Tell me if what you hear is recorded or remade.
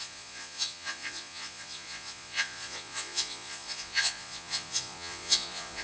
remade